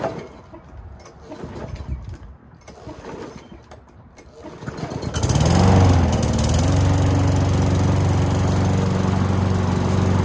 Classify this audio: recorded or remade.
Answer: recorded